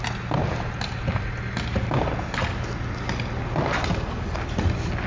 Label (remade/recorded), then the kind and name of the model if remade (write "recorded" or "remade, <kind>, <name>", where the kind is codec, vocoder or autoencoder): recorded